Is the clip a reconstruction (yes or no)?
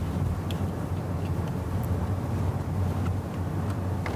no